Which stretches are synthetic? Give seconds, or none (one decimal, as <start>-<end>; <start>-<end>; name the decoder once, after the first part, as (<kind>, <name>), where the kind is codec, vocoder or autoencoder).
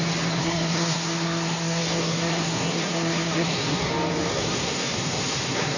0.4-3.9 (codec, SNAC); 4.3-5.8